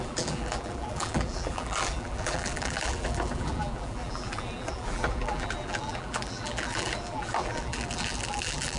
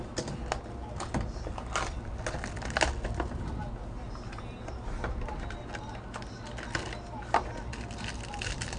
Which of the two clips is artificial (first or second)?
first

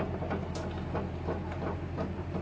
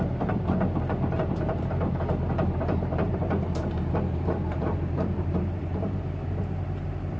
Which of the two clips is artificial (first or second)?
second